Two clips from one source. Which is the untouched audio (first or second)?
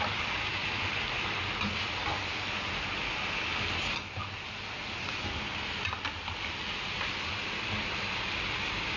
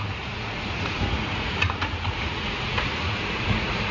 first